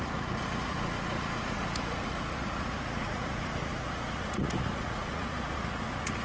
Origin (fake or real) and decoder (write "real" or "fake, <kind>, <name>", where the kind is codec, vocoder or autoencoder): fake, vocoder, Vocos